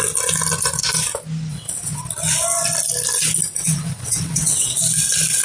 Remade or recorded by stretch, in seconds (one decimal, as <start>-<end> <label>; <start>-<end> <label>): 0.0-1.5 recorded; 1.5-2.0 remade; 2.0-3.6 recorded; 3.6-4.8 remade; 4.8-5.4 recorded